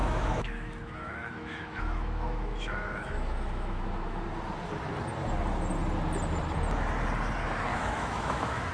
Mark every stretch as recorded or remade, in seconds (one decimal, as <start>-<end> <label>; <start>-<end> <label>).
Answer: 0.0-4.2 remade; 4.2-7.7 recorded; 7.7-8.7 remade